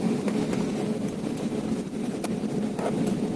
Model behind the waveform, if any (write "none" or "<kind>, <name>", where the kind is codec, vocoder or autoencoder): none